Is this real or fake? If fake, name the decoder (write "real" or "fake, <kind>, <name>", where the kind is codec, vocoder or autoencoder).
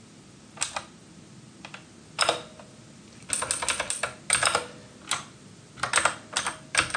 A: real